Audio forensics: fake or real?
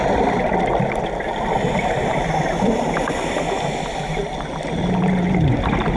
real